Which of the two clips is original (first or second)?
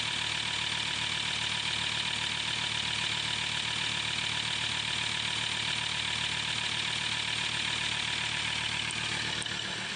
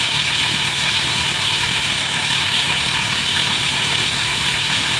first